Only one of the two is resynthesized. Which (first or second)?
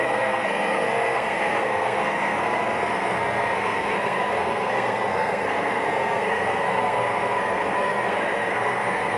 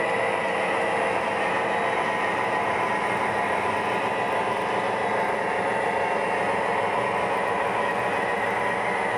first